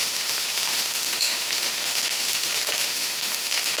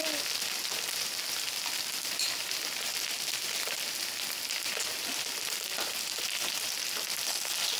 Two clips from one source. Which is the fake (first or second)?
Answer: first